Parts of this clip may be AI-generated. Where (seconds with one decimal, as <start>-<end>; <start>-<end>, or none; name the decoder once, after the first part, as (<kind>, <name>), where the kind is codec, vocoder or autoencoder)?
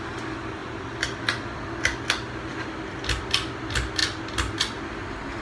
none